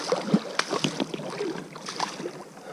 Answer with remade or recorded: recorded